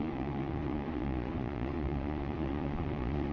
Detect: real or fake fake